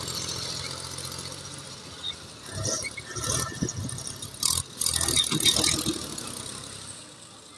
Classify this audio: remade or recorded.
recorded